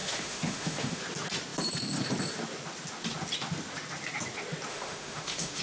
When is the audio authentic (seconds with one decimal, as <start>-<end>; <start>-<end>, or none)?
1.0-4.7